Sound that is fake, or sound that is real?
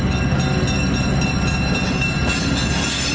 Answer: real